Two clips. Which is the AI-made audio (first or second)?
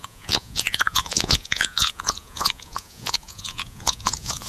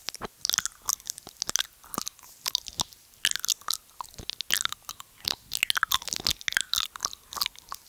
first